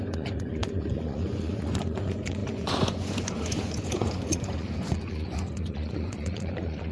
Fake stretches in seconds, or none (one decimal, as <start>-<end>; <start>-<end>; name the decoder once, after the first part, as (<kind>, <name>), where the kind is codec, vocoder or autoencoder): 0.0-6.9 (vocoder, Vocos)